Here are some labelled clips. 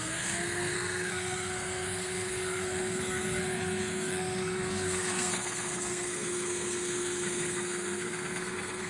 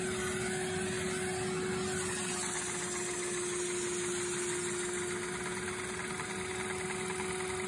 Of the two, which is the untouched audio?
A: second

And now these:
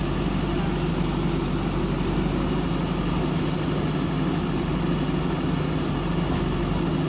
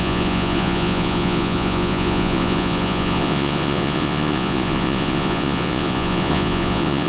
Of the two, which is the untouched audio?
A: first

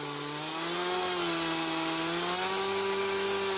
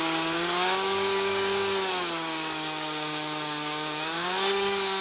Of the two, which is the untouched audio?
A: first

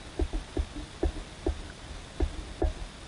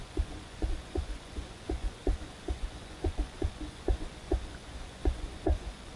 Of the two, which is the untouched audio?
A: first